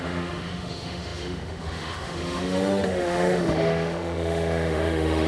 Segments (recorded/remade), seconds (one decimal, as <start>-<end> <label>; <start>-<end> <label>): 0.0-5.3 remade